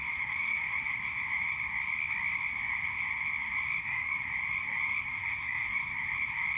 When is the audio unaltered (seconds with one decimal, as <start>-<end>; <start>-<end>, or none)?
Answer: 0.8-3.8; 4.3-5.0; 5.9-6.6